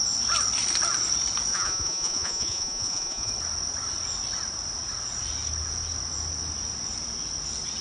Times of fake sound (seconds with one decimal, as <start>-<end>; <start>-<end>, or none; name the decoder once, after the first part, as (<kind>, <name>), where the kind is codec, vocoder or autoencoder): 1.5-3.3 (vocoder, Vocos)